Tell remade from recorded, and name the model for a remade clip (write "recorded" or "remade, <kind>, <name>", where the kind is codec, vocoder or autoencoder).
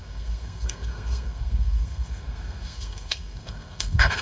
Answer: remade, codec, SNAC